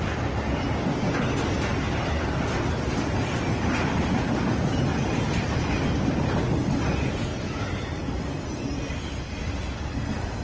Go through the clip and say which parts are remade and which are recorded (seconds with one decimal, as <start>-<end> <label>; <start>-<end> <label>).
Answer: 0.0-10.4 recorded